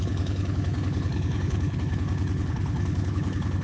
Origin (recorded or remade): remade